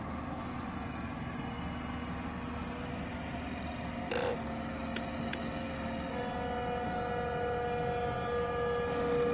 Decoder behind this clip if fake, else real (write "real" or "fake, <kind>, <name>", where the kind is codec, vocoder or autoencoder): real